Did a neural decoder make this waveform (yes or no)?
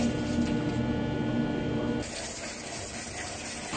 no